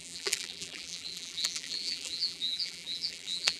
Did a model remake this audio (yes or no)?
yes